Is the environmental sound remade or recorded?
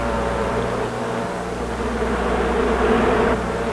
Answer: recorded